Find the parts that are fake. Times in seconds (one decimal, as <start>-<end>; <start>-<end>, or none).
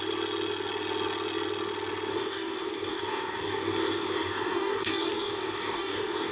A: 2.1-6.3